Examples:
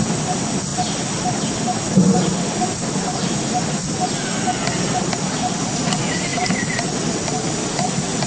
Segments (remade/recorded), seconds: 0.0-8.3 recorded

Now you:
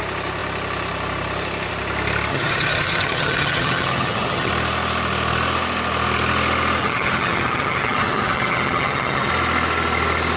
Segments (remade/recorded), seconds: 0.0-2.3 recorded; 2.3-4.5 remade; 4.5-6.8 recorded; 6.8-9.3 remade; 9.3-10.4 recorded

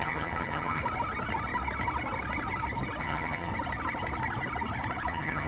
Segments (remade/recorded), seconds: 0.0-0.8 remade; 0.8-3.0 recorded; 3.0-3.5 remade; 3.5-5.1 recorded; 5.1-5.5 remade

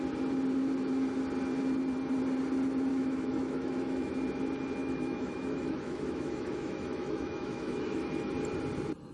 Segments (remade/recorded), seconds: 0.0-2.9 recorded; 2.9-4.1 remade; 4.1-4.8 recorded; 4.8-8.3 remade; 8.3-9.1 recorded

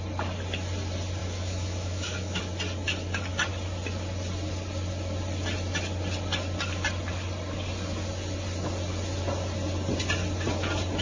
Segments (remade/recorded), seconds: 0.0-1.2 recorded; 1.2-2.4 remade; 2.4-11.0 recorded